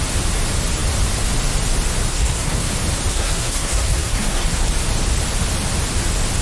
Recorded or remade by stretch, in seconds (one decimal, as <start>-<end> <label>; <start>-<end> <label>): 0.0-2.1 recorded; 2.1-2.7 remade; 2.7-3.1 recorded; 3.1-4.7 remade; 4.7-6.4 recorded

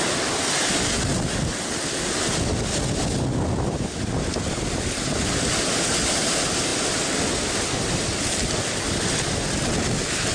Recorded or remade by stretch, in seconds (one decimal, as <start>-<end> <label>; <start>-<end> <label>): 0.0-10.3 recorded

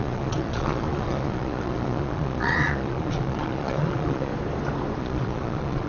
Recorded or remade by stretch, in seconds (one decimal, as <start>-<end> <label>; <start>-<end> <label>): 0.0-4.3 remade; 4.3-5.0 recorded; 5.0-5.9 remade

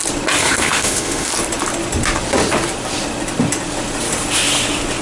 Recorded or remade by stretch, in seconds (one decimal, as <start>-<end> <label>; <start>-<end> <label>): 0.0-0.4 recorded; 0.4-1.3 remade; 1.3-5.0 recorded

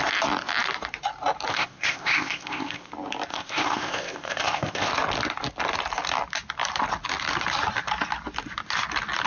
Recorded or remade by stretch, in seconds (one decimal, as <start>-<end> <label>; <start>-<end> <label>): 0.0-1.5 recorded; 1.5-2.9 remade; 2.9-3.3 recorded; 3.3-4.9 remade; 4.9-9.3 recorded

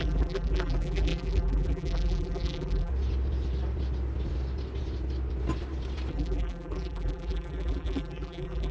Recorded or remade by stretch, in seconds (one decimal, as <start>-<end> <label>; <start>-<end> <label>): 0.0-2.9 remade; 2.9-6.1 recorded; 6.1-8.7 remade

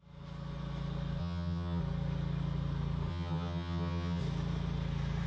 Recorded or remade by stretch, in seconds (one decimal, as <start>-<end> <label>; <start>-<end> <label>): 0.0-1.2 recorded; 1.2-1.8 remade; 1.8-3.1 recorded; 3.1-4.2 remade; 4.2-5.3 recorded